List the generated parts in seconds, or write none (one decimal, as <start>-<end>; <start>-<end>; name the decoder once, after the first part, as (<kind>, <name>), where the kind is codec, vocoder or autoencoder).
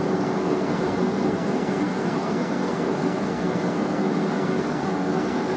0.0-5.6 (codec, SNAC)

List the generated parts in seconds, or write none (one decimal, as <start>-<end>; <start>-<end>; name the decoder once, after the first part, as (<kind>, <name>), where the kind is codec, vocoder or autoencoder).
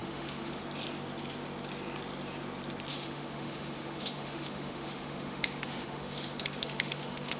0.0-0.6 (autoencoder, DAC-VAE); 2.9-7.4